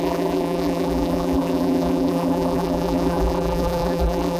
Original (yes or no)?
no